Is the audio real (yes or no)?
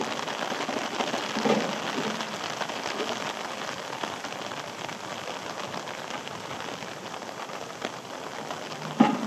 yes